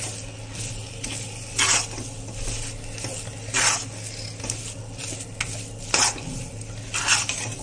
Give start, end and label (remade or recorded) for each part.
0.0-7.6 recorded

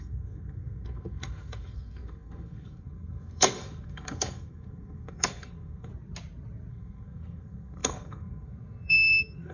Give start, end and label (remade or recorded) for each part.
0.0-5.9 remade; 5.9-6.7 recorded; 6.7-9.5 remade

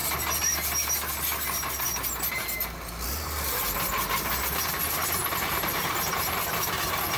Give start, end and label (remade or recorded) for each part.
0.0-2.3 recorded; 2.3-7.2 remade

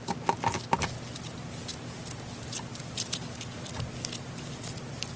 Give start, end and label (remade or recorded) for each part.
0.0-5.2 recorded

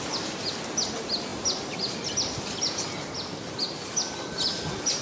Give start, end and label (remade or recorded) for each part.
0.0-5.0 recorded